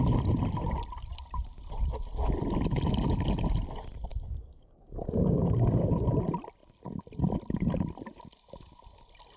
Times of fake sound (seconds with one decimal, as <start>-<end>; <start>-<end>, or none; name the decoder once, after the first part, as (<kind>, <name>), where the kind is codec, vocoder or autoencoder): 4.1-5.9 (codec, DAC)